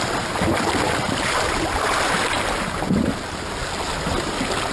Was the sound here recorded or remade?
recorded